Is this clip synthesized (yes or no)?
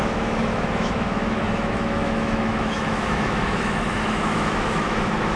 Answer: yes